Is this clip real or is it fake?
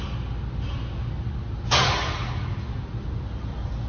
real